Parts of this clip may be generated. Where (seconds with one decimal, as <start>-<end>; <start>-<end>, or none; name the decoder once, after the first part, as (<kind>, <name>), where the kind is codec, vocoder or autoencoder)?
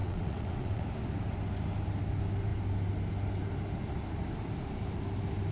0.0-0.8 (vocoder, WaveNeXt)